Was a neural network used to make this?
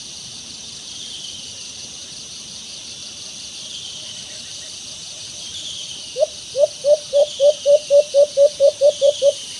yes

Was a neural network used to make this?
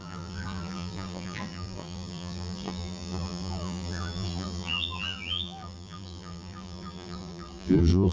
yes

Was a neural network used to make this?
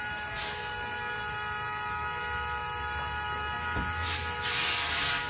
no